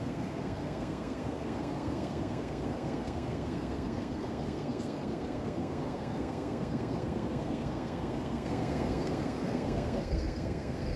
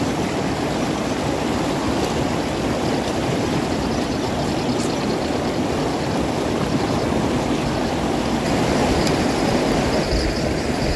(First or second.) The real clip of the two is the second